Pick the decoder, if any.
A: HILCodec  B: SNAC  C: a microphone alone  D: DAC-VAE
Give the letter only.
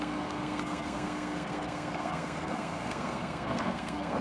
B